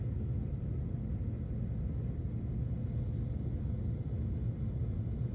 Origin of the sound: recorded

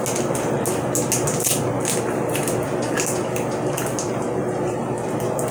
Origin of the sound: recorded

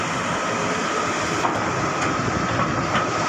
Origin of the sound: remade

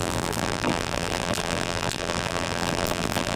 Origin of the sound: remade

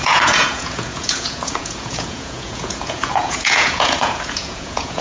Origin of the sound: remade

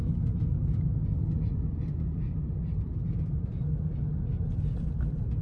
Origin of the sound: recorded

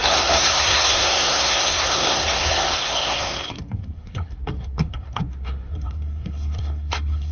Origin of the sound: remade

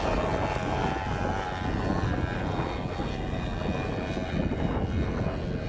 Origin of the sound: recorded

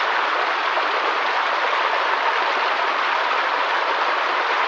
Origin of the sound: recorded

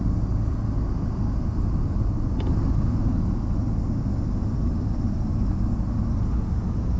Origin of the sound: recorded